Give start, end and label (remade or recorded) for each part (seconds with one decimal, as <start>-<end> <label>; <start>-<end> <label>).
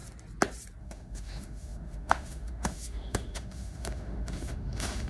0.0-0.8 recorded; 0.8-5.1 remade